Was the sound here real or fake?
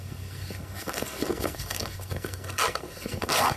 fake